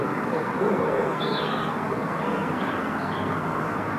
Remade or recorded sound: remade